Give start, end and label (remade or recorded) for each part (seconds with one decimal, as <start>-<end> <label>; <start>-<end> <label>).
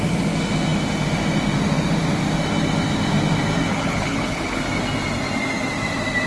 0.0-3.7 recorded; 3.7-4.6 remade; 4.6-6.3 recorded